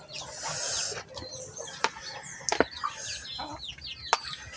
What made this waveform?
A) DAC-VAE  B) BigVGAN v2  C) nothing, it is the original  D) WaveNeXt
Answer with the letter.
C